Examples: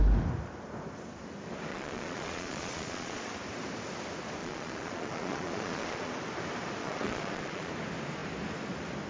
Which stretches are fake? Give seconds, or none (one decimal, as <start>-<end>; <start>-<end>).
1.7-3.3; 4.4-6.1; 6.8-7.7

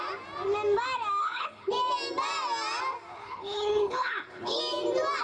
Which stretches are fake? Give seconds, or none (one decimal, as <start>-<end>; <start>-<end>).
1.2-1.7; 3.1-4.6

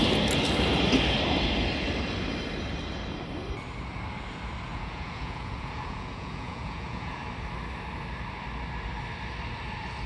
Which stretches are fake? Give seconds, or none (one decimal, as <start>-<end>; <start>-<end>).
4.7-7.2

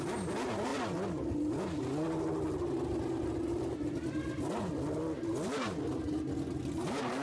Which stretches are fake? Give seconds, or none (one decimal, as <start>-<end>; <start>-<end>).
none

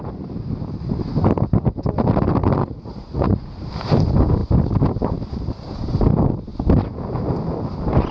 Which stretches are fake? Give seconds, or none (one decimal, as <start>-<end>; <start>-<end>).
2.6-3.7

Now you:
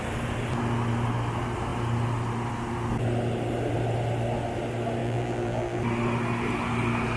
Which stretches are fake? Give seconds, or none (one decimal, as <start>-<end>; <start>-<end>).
5.0-5.8

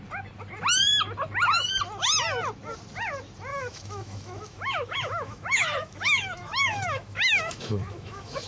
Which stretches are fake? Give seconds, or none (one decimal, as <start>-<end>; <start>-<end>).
3.5-8.5

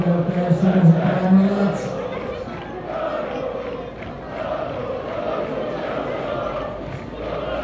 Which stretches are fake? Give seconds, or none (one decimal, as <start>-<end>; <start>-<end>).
none